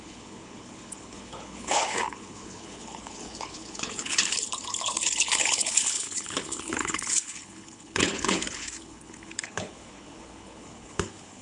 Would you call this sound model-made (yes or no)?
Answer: yes